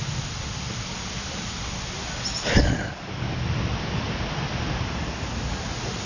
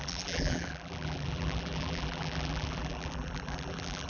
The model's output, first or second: second